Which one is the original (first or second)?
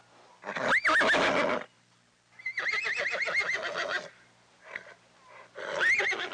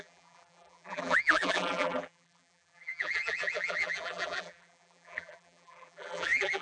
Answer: first